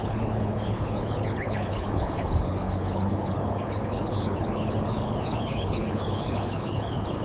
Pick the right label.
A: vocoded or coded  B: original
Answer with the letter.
A